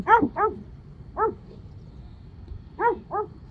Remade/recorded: remade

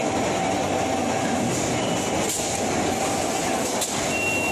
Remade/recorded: recorded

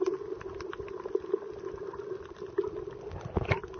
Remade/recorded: recorded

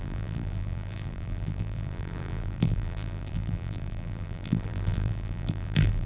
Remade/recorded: remade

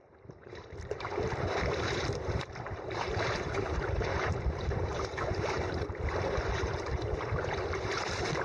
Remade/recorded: remade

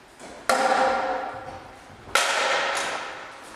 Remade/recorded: recorded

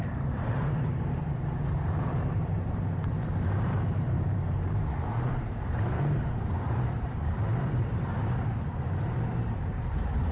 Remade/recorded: remade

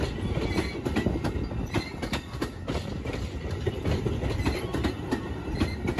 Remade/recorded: recorded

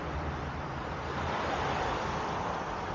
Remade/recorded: remade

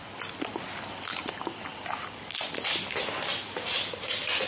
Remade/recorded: recorded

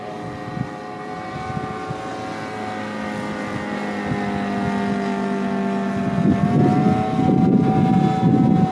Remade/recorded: recorded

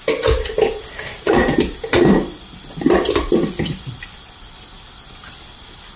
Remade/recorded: remade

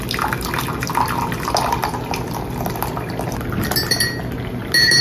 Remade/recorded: recorded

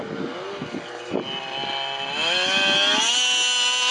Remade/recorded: recorded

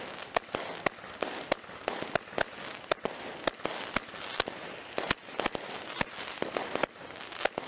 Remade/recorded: recorded